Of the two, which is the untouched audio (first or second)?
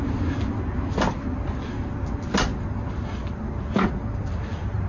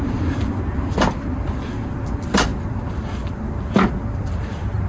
first